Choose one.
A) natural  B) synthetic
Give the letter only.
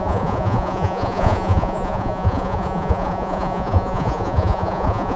B